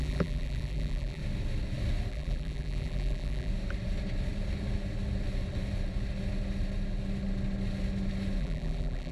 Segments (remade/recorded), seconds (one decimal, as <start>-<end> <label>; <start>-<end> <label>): 0.0-1.2 remade; 1.2-2.1 recorded; 2.1-3.5 remade; 3.5-8.4 recorded; 8.4-9.1 remade